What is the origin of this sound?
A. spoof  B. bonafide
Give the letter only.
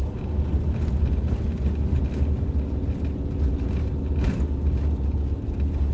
B